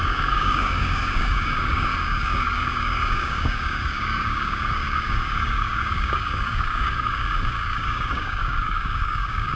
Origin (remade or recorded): remade